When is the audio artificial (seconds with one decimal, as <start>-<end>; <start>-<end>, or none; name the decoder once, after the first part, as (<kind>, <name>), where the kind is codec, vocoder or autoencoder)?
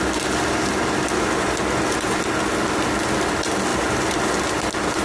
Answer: none